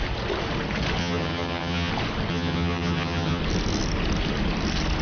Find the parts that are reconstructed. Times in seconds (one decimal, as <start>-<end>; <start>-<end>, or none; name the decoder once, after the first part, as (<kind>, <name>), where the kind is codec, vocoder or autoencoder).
1.0-1.9 (vocoder, HiFi-GAN); 2.3-3.4